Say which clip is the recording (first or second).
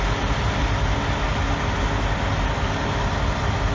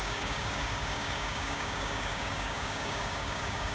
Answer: first